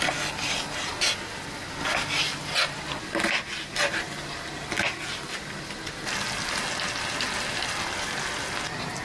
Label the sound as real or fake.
real